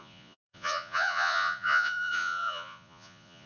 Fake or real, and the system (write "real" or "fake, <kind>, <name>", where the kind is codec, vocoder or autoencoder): fake, vocoder, Vocos